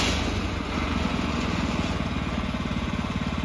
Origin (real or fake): fake